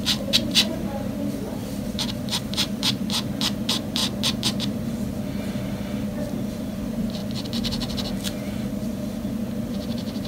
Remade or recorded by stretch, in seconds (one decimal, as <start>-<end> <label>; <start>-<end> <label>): 0.0-4.0 remade; 4.0-6.5 recorded; 6.5-7.2 remade; 7.2-9.7 recorded; 9.7-10.3 remade